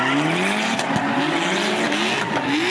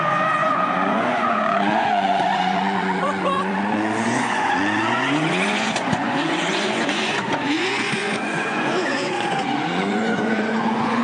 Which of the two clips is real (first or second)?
first